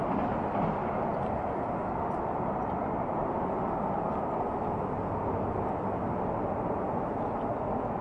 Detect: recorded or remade recorded